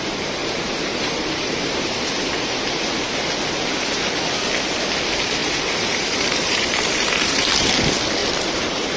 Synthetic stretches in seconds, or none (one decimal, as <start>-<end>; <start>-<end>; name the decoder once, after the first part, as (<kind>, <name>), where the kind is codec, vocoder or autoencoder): 0.4-2.1 (vocoder, BigVGAN v2); 5.4-7.7; 8.2-9.0